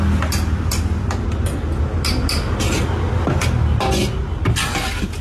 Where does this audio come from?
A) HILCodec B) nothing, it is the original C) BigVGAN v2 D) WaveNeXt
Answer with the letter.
B